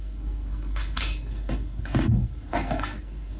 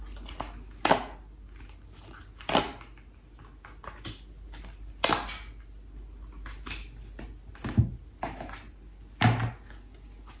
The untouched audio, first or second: second